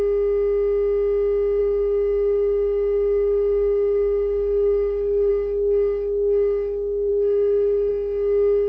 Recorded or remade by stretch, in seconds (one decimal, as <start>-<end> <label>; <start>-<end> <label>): 0.0-1.6 recorded; 1.6-5.3 remade; 5.3-7.1 recorded; 7.1-7.9 remade; 7.9-8.7 recorded